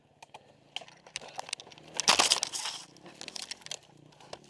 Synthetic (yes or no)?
no